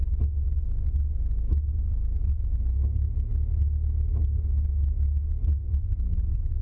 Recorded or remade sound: recorded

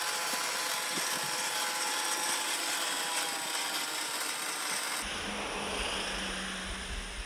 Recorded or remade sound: recorded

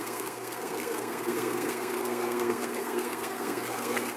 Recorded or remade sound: remade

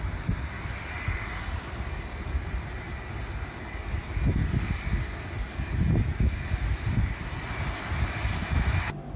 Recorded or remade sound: recorded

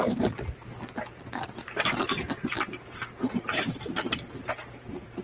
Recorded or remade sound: recorded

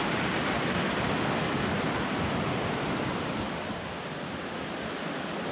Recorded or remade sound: recorded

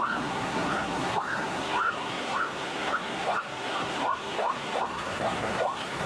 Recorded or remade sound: remade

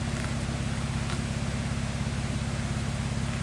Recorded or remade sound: recorded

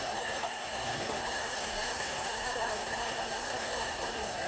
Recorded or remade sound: remade